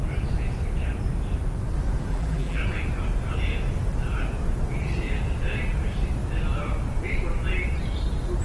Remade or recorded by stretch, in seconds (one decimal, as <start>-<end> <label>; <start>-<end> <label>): 0.0-2.1 recorded; 2.1-2.6 remade; 2.6-8.4 recorded